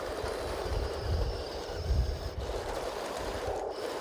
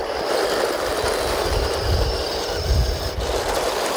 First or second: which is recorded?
second